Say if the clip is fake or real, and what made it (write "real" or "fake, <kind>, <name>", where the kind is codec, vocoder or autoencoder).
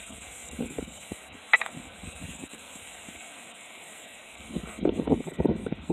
fake, codec, SNAC